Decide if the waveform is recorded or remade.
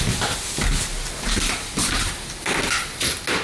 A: recorded